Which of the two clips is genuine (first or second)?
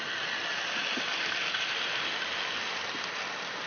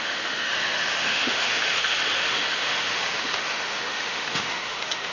first